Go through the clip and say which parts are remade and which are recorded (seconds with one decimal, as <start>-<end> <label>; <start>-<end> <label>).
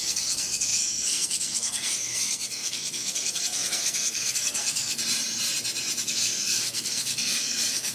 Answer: 0.0-5.0 remade; 5.0-6.0 recorded; 6.0-7.9 remade